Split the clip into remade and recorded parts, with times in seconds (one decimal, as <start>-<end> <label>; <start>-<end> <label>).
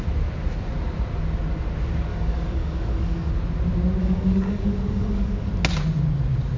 0.0-2.1 recorded; 2.1-3.3 remade; 3.3-4.0 recorded; 4.0-5.5 remade; 5.5-6.6 recorded